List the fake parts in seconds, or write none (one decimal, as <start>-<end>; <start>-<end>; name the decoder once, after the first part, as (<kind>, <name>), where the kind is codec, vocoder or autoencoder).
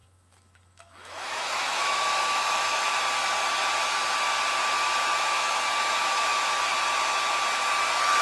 0.0-3.0 (autoencoder, DAC-VAE); 5.1-5.6; 6.0-6.7